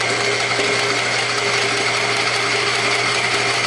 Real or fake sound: real